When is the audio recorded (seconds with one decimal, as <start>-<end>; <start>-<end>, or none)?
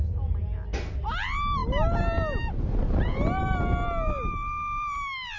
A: 0.0-5.4